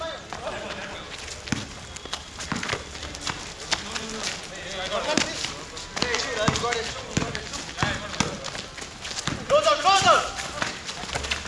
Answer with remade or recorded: recorded